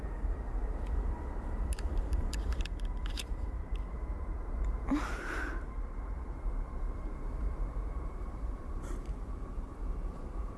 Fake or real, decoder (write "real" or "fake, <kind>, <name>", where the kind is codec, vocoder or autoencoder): fake, vocoder, BigVGAN v2